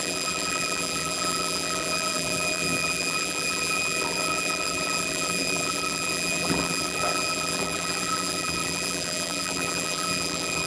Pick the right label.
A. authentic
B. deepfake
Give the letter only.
B